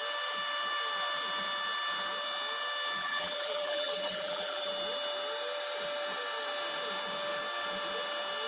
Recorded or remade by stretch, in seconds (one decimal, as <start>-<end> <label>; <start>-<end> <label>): 0.0-3.0 recorded; 3.0-4.7 remade; 4.7-8.5 recorded